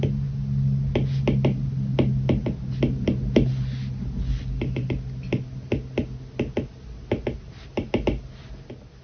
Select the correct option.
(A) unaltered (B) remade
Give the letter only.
A